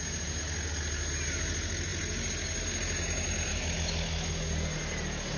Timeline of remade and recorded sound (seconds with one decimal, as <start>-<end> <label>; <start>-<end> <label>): 0.0-3.5 recorded; 3.5-4.3 remade; 4.3-5.4 recorded